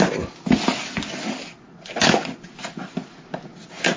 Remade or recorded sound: recorded